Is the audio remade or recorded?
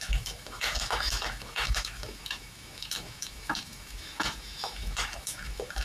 remade